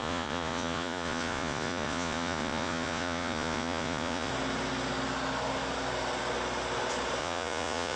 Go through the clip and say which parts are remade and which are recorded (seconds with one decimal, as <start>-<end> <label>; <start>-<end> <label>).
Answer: 0.0-4.3 remade; 4.3-7.2 recorded; 7.2-8.0 remade